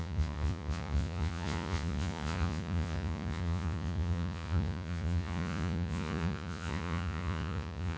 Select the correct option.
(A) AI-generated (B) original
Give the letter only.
A